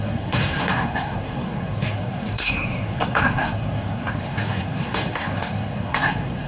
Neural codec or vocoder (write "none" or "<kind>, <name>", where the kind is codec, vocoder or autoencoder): codec, SNAC